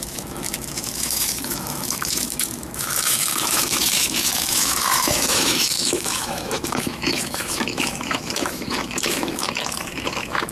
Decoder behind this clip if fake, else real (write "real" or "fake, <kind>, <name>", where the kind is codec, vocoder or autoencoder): fake, autoencoder, DAC-VAE